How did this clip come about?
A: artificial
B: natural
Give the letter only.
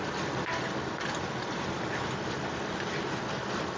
B